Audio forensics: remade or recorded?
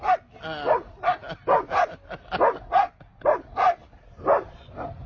recorded